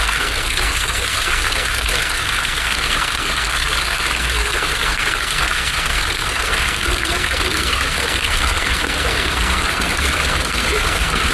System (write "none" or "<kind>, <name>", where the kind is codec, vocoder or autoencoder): codec, SNAC